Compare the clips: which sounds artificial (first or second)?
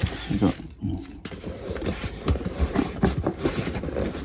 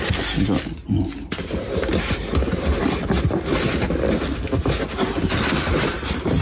first